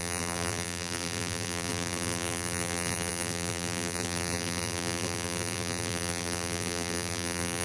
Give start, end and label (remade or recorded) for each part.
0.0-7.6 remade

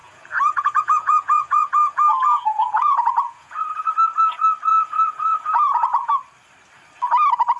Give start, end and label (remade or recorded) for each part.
0.0-3.7 remade; 3.7-4.7 recorded; 4.7-6.1 remade; 6.1-7.6 recorded

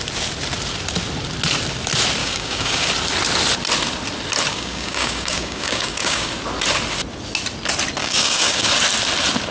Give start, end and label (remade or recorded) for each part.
0.0-2.2 recorded; 2.2-2.9 remade; 2.9-4.5 recorded; 4.5-6.3 remade; 6.3-8.0 recorded; 8.0-8.7 remade; 8.7-9.5 recorded

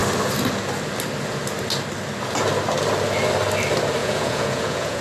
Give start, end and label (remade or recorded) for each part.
0.0-4.0 recorded; 4.0-5.0 remade

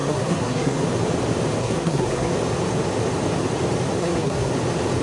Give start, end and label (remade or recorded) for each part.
0.0-0.8 remade; 0.8-1.6 recorded; 1.6-2.3 remade; 2.3-4.0 recorded; 4.0-4.5 remade; 4.5-5.0 recorded